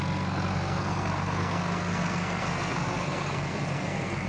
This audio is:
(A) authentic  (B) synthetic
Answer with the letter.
B